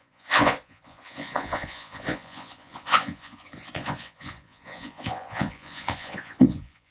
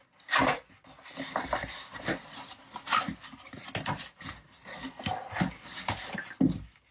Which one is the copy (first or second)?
first